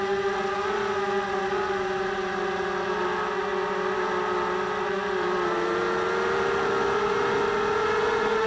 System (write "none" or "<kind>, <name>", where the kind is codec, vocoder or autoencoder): none